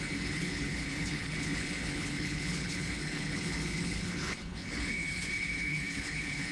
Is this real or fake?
fake